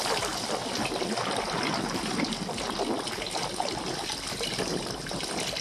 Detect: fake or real real